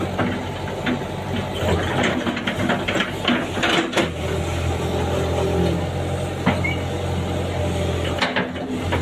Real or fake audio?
real